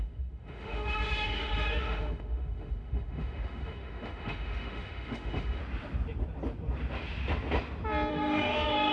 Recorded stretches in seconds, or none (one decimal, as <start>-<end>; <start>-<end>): 5.6-8.1